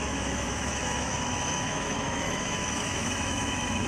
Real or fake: fake